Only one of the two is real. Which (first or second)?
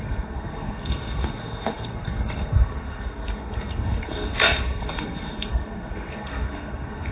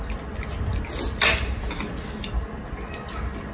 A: second